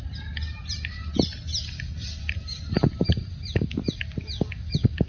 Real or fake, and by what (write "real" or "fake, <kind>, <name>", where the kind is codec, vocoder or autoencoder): real